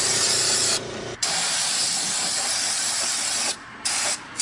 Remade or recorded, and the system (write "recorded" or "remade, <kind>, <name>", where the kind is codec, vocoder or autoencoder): remade, vocoder, BigVGAN v2